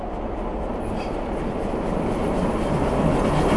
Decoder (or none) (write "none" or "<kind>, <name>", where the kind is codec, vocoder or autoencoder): none